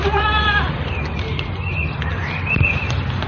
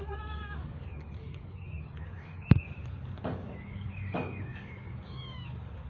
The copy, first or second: second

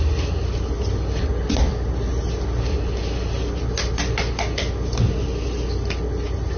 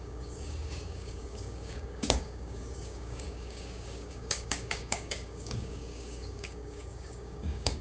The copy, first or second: second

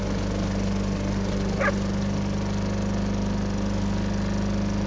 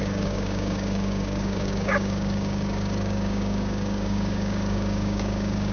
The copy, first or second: second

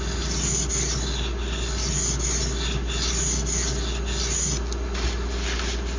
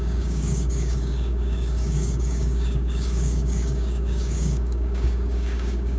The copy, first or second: second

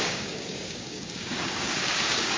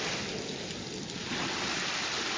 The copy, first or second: first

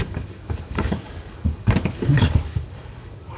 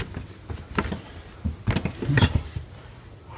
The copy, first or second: first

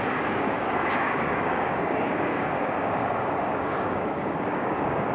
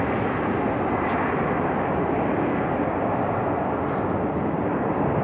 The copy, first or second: first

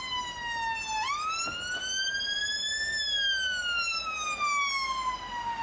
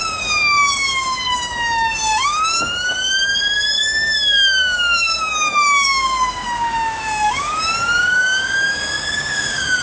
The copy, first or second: second